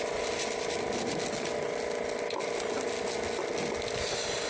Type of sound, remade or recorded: recorded